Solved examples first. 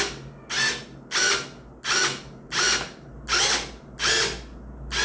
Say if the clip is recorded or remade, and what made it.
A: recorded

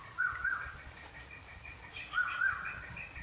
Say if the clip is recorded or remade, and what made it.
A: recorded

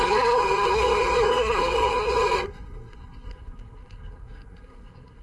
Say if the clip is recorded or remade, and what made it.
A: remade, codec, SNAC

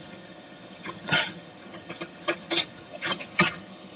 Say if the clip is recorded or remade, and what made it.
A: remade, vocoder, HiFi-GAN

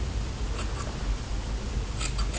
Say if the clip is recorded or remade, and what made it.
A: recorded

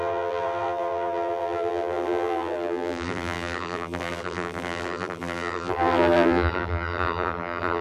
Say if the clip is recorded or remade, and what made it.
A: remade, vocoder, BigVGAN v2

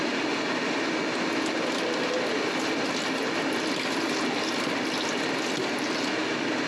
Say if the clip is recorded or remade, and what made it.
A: recorded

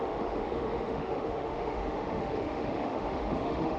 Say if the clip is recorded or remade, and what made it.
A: remade, autoencoder, DAC-VAE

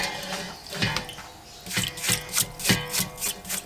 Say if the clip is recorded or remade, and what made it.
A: recorded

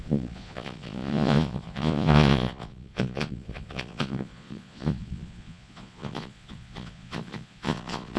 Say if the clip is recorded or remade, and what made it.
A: remade, vocoder, Vocos